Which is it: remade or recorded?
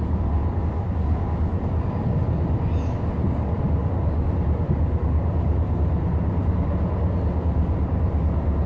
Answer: recorded